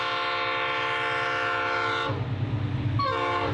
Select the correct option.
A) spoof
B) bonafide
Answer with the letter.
B